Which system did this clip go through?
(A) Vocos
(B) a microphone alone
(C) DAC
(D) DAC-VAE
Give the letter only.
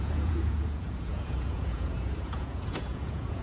A